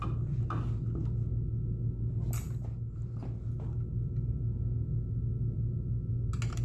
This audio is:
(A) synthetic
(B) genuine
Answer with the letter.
B